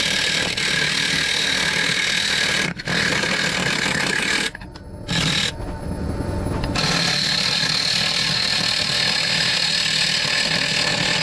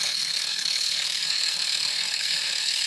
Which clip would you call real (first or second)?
first